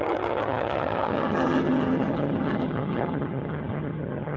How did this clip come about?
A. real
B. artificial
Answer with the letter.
B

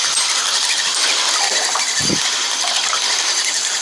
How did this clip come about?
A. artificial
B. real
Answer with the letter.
B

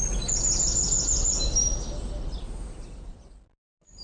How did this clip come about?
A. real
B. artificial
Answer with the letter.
A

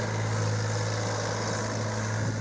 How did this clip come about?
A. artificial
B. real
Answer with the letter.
B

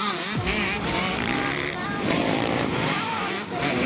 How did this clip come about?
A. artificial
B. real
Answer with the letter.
A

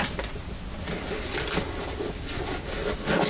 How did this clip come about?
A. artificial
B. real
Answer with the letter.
B